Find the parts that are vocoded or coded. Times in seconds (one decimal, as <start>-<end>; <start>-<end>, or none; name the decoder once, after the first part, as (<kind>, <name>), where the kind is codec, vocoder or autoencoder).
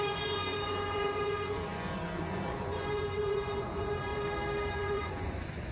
0.0-4.1 (vocoder, Vocos); 4.7-5.7